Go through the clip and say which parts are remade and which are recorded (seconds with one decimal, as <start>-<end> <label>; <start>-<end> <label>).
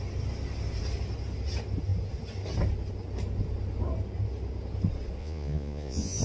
0.0-5.2 recorded; 5.2-6.2 remade